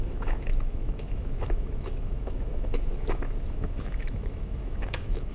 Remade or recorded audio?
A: remade